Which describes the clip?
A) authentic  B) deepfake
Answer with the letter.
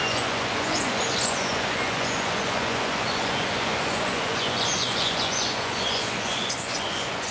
B